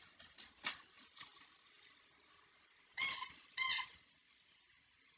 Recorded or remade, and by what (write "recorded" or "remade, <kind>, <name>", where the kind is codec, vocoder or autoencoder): recorded